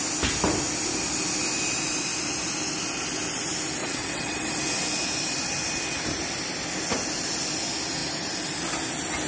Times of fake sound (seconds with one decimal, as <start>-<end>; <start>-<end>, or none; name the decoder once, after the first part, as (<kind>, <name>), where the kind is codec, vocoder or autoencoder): 3.8-4.5 (vocoder, WaveNeXt)